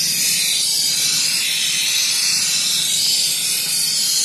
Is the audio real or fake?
real